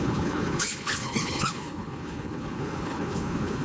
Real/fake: fake